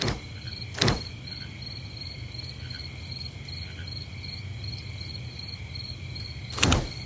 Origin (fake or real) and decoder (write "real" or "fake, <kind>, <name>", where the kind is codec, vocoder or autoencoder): real